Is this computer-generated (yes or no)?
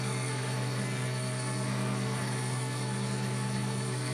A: yes